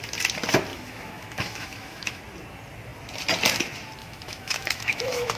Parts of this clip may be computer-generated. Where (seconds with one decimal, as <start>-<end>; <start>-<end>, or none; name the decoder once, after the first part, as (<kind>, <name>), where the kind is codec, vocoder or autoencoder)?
0.7-2.2 (autoencoder, DAC-VAE); 4.0-5.4

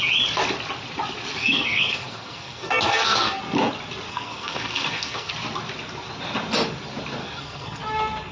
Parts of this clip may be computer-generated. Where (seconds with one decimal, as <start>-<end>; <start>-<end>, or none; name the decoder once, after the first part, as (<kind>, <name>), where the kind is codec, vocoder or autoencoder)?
1.4-3.4 (codec, SNAC); 4.1-5.3; 7.2-7.8

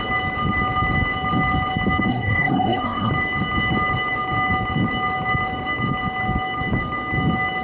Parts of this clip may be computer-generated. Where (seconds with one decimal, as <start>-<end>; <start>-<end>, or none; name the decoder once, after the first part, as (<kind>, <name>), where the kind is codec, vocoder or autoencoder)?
2.1-3.1 (codec, SNAC)

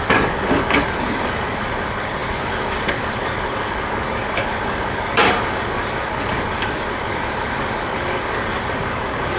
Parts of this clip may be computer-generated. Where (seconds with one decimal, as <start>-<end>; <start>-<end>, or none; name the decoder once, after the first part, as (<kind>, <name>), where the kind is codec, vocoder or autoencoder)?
0.0-9.4 (codec, DAC)

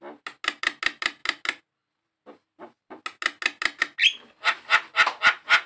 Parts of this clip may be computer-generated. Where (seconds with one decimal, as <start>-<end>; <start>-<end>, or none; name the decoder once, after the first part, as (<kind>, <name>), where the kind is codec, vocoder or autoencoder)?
none